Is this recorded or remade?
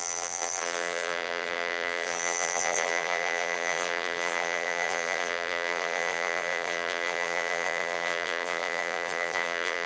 remade